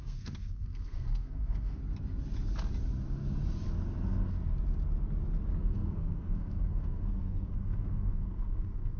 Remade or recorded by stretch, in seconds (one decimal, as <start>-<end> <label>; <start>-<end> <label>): 0.0-1.8 remade; 1.8-5.6 recorded; 5.6-9.0 remade